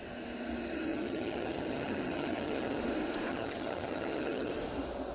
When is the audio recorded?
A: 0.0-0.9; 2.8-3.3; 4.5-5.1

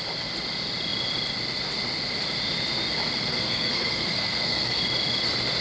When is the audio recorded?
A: 0.0-3.3; 4.8-5.6

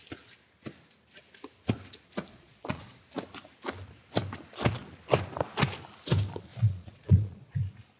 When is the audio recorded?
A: 0.0-2.3; 3.0-6.5; 7.5-8.0

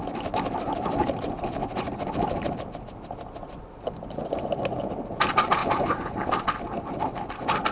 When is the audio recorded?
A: 0.0-1.6; 2.1-5.6; 6.3-7.7

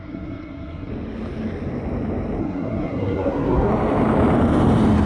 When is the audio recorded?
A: 0.9-2.4; 3.7-5.1